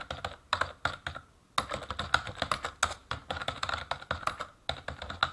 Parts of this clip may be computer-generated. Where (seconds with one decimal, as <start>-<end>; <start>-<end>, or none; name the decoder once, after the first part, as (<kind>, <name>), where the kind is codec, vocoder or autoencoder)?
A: 3.0-3.8 (vocoder, BigVGAN v2)